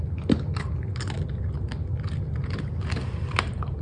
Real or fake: real